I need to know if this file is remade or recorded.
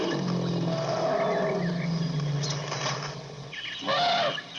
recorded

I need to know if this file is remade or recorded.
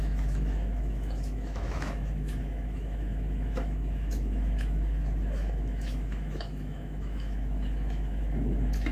remade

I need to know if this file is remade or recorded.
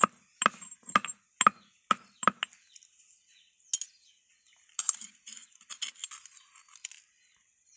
recorded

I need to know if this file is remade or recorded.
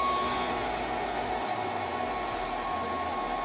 recorded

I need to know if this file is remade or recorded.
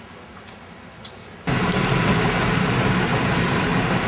recorded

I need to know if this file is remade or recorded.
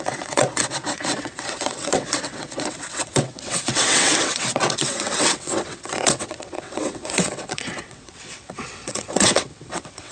remade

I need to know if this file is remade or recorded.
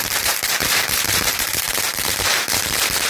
remade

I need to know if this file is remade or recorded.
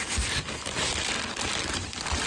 recorded